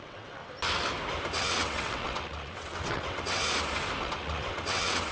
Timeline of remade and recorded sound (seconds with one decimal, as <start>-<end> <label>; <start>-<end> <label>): 0.0-0.4 remade; 0.4-1.4 recorded; 1.4-3.4 remade; 3.4-4.0 recorded; 4.0-5.1 remade